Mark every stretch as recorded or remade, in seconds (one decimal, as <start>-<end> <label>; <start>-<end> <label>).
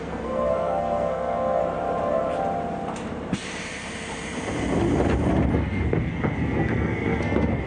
0.0-1.6 remade; 1.6-5.5 recorded; 5.5-7.7 remade